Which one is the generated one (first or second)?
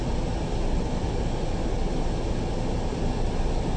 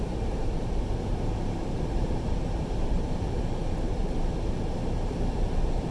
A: second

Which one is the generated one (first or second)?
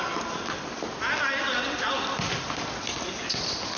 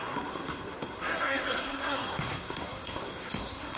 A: second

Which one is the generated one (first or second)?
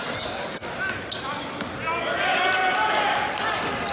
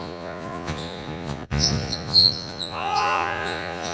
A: second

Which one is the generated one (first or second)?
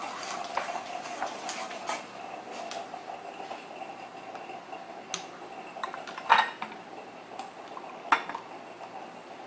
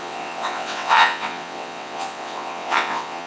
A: second